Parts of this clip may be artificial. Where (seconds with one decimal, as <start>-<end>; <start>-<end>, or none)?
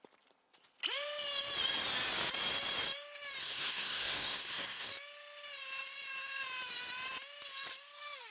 3.4-4.9